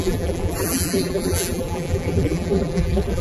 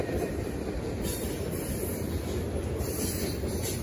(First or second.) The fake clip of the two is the first